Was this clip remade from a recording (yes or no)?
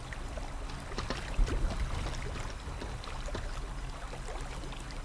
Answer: no